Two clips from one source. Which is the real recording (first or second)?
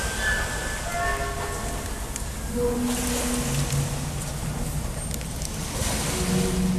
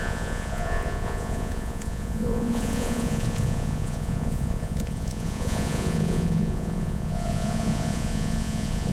first